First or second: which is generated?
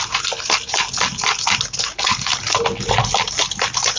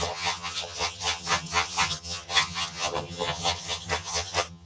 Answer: second